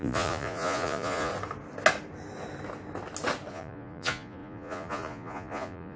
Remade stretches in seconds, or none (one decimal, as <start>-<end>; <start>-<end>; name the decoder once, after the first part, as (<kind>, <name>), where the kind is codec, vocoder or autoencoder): 0.0-1.3 (vocoder, Vocos); 3.5-6.0